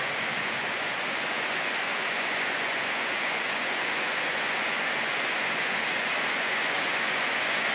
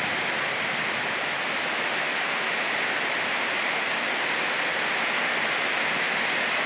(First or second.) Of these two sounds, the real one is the second